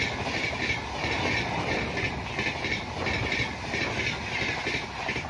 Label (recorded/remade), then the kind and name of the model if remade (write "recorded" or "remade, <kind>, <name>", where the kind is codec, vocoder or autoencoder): recorded